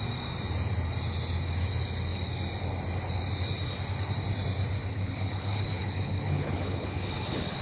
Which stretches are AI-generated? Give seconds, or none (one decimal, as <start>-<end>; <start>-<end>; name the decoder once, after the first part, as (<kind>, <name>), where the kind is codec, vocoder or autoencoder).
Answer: 4.9-7.6 (codec, HILCodec)